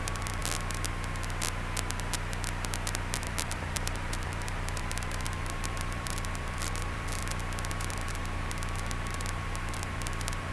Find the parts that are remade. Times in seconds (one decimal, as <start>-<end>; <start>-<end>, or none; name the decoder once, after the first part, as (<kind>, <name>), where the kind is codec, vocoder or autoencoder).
0.0-0.4 (vocoder, BigVGAN v2); 3.2-7.2; 7.7-10.5